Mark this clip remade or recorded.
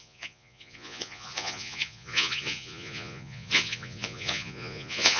remade